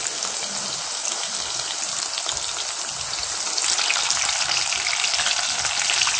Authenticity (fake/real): real